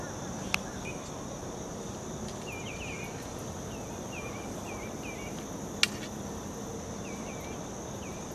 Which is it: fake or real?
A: real